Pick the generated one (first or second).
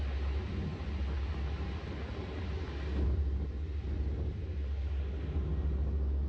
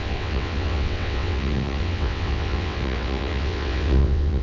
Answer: second